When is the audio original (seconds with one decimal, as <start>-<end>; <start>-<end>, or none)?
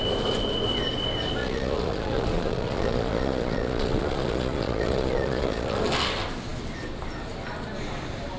0.0-1.4; 5.8-8.4